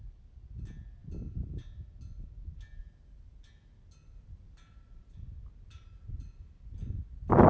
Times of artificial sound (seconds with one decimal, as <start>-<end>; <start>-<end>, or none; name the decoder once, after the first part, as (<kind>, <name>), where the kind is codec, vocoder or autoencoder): none